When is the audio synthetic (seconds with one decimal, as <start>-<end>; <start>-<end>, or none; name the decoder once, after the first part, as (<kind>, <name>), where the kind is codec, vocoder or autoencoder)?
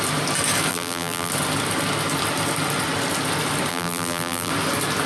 0.7-1.3 (vocoder, BigVGAN v2); 3.7-4.5